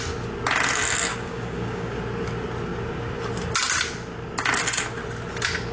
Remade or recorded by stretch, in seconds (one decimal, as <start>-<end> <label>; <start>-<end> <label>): 0.0-1.1 recorded; 1.1-2.0 remade; 2.0-5.7 recorded